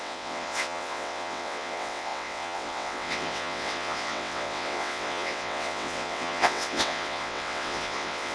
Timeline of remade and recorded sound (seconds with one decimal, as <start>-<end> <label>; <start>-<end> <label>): 0.0-8.3 remade